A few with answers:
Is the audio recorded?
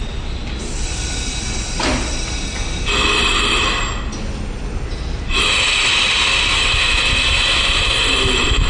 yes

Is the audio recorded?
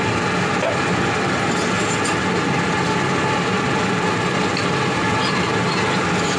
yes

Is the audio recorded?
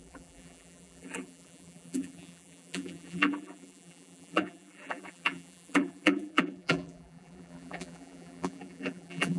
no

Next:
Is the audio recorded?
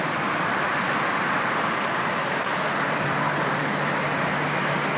yes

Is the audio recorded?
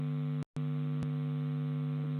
yes